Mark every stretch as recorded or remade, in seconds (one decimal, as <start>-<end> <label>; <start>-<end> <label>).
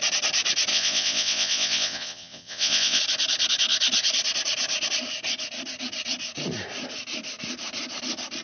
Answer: 0.0-0.7 recorded; 0.7-3.0 remade; 3.0-8.4 recorded